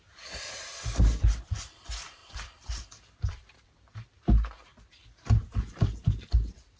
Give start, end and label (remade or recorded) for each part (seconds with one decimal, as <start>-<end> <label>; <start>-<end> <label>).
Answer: 0.0-6.8 remade

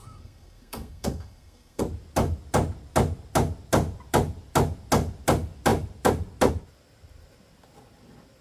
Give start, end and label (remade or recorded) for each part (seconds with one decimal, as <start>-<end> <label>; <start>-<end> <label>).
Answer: 0.0-1.8 remade; 1.8-8.4 recorded

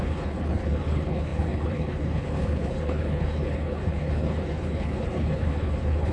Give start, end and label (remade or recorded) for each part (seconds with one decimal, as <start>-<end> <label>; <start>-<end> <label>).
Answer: 0.0-6.1 remade

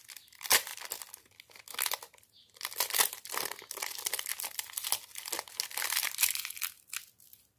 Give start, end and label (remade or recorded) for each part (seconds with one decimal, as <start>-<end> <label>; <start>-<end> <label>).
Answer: 0.0-7.6 recorded

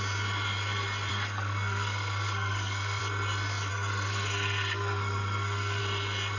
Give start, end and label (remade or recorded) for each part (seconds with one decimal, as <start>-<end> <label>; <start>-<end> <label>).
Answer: 0.0-1.1 recorded; 1.1-3.0 remade; 3.0-3.7 recorded; 3.7-5.8 remade; 5.8-6.4 recorded

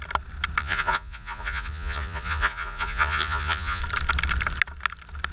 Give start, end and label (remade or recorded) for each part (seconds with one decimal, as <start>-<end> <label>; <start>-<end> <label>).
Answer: 0.0-0.6 recorded; 0.6-3.8 remade; 3.8-5.3 recorded